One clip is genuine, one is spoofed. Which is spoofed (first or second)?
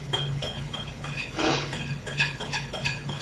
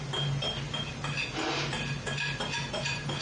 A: first